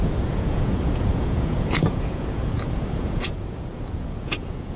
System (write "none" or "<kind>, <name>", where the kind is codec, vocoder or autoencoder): vocoder, Vocos